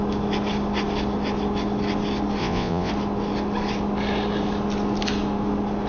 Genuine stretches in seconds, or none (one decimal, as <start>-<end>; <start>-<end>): 0.0-2.4; 2.9-5.9